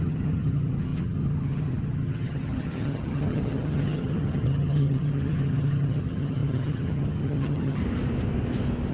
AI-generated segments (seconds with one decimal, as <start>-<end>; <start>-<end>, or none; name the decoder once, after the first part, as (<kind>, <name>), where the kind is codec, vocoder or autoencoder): 0.0-7.8 (vocoder, HiFi-GAN)